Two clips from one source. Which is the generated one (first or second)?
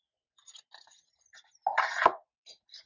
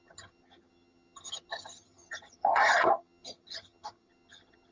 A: second